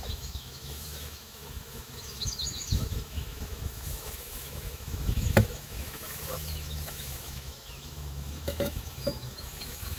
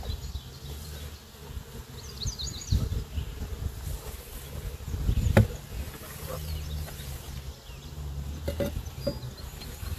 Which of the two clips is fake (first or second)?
first